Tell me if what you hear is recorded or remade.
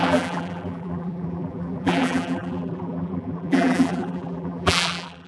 remade